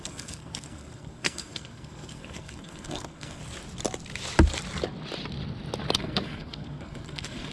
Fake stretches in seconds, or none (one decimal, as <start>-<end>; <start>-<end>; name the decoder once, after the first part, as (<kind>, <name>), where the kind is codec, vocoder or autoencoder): 0.0-3.4 (codec, SNAC); 6.0-7.5